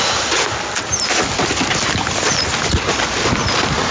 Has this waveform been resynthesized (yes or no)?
no